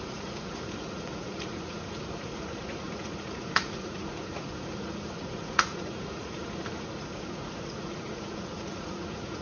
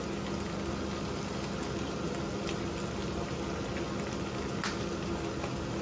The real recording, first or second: second